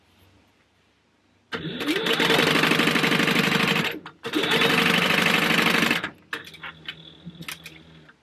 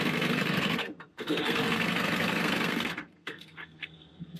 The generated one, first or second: second